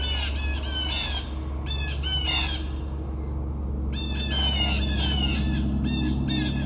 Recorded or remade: recorded